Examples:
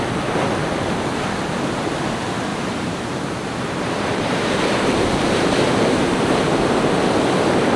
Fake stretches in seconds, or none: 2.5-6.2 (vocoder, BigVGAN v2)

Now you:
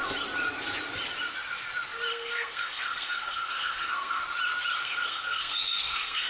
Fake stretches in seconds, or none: 2.1-4.2 (codec, SNAC); 4.8-6.3

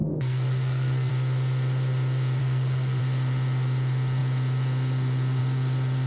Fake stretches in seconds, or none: 0.0-1.1 (codec, SNAC); 2.4-3.0

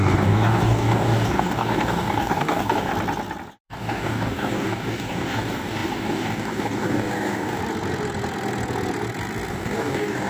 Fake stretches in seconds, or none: 0.0-2.9 (codec, DAC); 3.5-7.6; 9.5-10.3

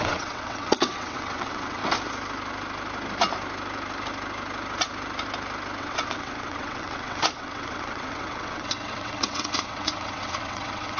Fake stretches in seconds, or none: 0.0-1.8 (vocoder, WaveNeXt); 5.8-11.0